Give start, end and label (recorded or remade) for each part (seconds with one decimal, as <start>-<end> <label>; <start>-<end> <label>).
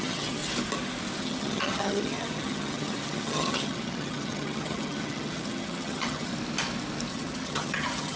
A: 0.0-0.4 remade; 0.4-1.2 recorded; 1.2-6.3 remade; 6.3-7.1 recorded; 7.1-8.2 remade